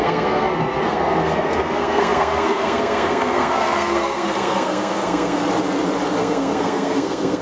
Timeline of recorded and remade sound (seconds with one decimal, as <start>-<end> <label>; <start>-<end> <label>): 0.0-5.4 remade; 5.4-6.2 recorded; 6.2-7.4 remade